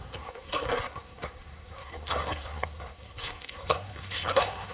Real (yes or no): no